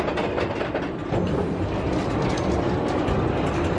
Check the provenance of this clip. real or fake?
real